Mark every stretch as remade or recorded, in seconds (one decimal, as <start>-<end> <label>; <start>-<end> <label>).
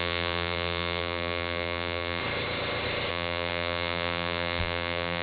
0.0-2.2 remade; 2.2-3.1 recorded; 3.1-5.2 remade